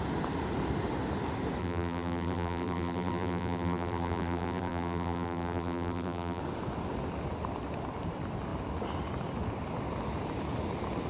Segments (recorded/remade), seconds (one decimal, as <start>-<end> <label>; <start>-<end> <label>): 0.0-1.6 recorded; 1.6-6.4 remade; 6.4-11.1 recorded